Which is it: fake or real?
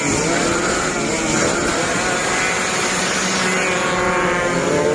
real